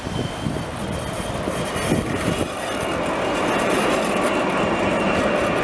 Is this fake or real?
real